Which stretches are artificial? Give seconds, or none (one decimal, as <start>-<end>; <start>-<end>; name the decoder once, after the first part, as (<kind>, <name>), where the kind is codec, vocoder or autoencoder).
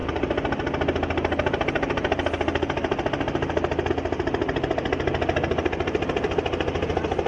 none